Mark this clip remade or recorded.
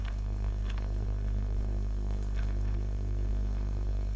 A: remade